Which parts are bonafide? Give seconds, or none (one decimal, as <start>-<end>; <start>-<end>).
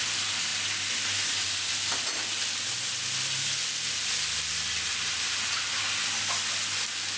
0.0-7.2